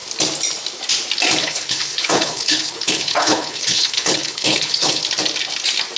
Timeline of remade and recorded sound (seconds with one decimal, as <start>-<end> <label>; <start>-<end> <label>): 0.0-1.4 recorded; 1.4-5.0 remade; 5.0-6.0 recorded